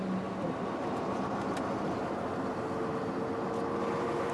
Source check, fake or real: real